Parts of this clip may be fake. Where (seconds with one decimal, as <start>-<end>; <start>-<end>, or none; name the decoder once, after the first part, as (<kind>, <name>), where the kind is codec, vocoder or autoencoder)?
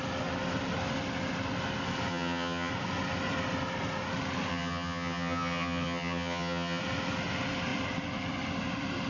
2.1-2.7 (vocoder, HiFi-GAN); 4.5-6.8